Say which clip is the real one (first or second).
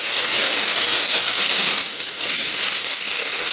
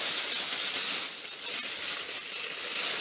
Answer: second